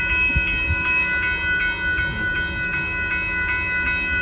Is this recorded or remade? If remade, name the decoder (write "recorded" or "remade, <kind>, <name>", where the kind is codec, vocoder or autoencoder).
recorded